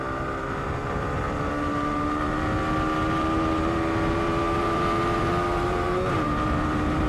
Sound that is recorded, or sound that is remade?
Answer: remade